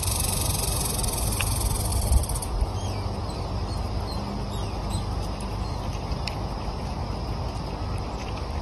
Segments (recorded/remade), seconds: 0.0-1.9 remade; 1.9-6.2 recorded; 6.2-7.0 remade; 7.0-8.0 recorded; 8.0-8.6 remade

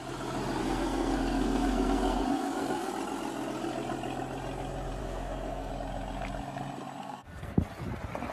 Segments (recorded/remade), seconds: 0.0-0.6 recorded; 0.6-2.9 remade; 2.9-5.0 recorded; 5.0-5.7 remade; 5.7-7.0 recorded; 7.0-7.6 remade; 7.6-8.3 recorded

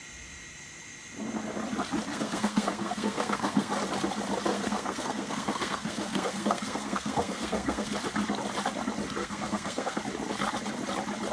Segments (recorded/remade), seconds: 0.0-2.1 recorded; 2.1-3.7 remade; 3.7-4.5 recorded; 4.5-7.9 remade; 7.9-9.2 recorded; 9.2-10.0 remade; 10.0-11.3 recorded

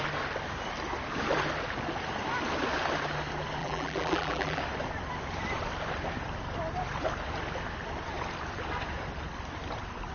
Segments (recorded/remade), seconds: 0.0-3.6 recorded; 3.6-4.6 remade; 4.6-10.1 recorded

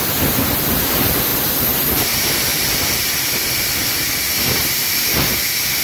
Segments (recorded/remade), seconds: 0.0-5.8 recorded